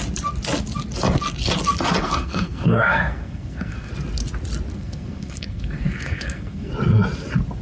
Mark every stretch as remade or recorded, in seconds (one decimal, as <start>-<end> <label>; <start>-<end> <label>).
0.0-2.0 recorded; 2.0-3.9 remade; 3.9-4.7 recorded; 4.7-6.7 remade; 6.7-7.6 recorded